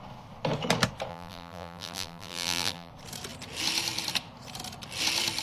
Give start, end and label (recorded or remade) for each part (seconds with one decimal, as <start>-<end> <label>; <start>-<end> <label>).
0.0-1.1 recorded; 1.1-2.9 remade; 2.9-5.4 recorded